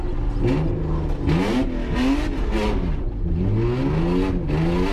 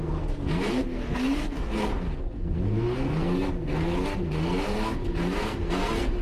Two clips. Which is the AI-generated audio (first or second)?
second